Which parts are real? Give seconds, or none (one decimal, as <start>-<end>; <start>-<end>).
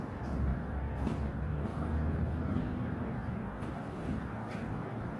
none